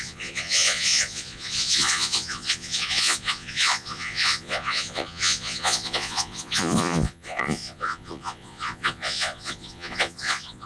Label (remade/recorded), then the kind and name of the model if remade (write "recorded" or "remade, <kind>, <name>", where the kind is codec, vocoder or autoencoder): remade, vocoder, Vocos